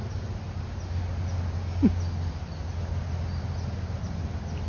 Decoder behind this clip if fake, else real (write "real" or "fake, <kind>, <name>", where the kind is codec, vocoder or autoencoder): real